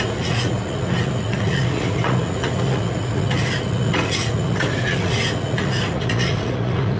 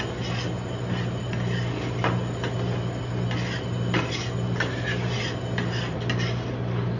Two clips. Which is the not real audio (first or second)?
first